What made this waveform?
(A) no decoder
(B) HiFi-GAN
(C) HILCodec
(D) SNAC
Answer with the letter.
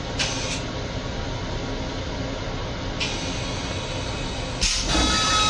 A